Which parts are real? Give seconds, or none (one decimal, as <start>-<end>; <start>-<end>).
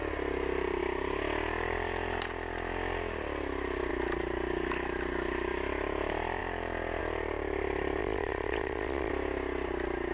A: 0.0-8.0; 9.1-10.1